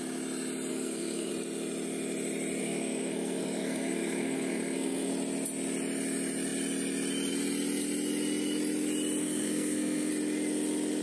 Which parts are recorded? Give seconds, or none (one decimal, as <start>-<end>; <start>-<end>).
0.0-0.7; 1.3-2.6; 5.1-9.2; 10.1-11.0